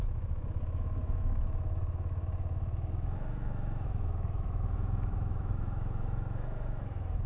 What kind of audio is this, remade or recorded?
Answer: remade